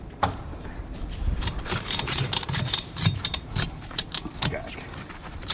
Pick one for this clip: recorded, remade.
remade